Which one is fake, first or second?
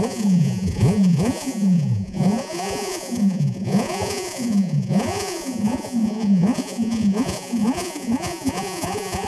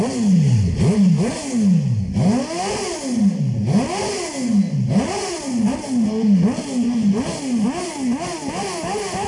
first